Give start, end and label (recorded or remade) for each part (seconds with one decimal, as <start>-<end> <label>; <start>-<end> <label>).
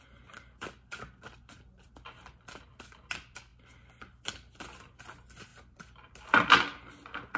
0.0-7.4 recorded